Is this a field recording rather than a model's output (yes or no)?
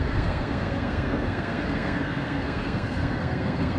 no